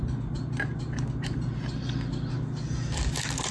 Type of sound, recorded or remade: recorded